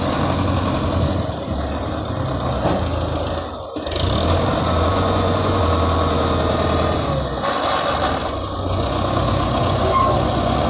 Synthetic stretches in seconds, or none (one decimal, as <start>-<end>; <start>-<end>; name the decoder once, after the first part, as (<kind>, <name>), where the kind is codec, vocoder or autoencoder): 4.9-5.6 (vocoder, Vocos); 8.2-10.7